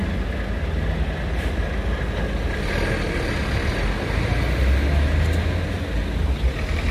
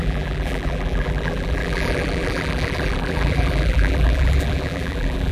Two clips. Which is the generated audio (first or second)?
second